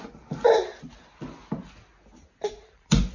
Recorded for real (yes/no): yes